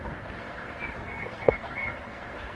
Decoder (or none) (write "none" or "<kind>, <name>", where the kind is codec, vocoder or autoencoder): codec, SNAC